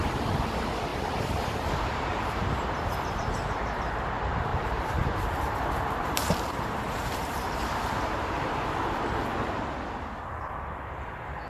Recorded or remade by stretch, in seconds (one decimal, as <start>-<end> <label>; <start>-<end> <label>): 0.0-0.9 recorded; 0.9-3.8 remade; 3.8-4.5 recorded; 4.5-9.0 remade; 9.0-11.5 recorded